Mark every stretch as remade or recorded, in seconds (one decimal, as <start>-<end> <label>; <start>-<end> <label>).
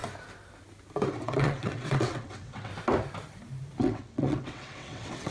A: 0.0-1.1 recorded; 1.1-2.7 remade; 2.7-3.8 recorded; 3.8-5.3 remade